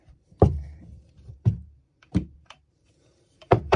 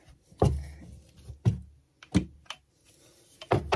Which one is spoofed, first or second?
first